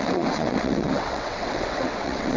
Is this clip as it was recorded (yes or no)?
no